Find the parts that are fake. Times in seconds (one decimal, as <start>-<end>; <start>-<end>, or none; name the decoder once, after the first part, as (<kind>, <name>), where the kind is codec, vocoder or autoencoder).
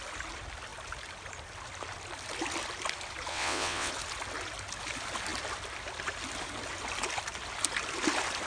3.3-3.9 (vocoder, WaveNeXt)